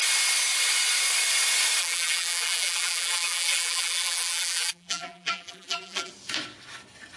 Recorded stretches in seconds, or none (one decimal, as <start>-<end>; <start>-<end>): 0.0-1.8; 6.1-7.2